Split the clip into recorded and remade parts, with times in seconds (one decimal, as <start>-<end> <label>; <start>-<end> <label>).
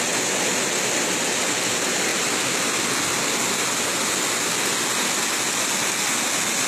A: 0.0-6.7 recorded